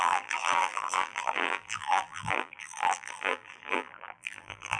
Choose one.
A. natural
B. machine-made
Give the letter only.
B